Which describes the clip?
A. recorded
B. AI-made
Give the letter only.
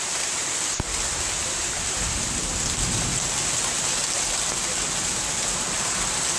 A